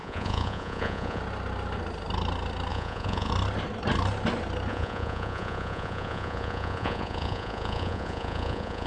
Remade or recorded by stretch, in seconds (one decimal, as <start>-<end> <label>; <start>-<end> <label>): 0.0-1.2 remade; 1.2-2.7 recorded; 2.7-3.3 remade; 3.3-4.7 recorded; 4.7-8.9 remade